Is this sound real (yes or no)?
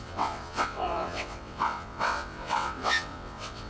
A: no